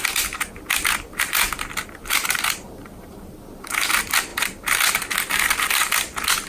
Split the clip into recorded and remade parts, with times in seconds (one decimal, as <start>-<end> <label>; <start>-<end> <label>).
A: 0.0-4.3 remade; 4.3-5.6 recorded; 5.6-6.5 remade